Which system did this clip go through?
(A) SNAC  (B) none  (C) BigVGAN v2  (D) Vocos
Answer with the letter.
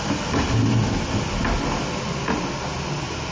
B